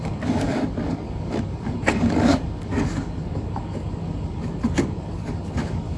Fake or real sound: fake